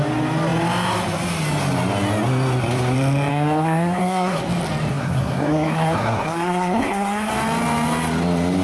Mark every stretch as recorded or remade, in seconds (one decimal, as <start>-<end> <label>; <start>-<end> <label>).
0.0-3.3 recorded; 3.3-4.4 remade; 4.4-4.9 recorded; 4.9-7.3 remade; 7.3-8.6 recorded